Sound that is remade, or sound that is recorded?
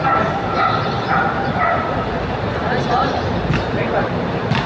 recorded